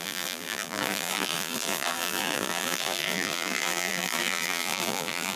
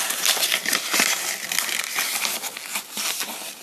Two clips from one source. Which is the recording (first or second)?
second